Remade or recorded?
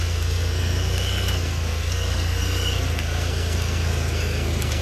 remade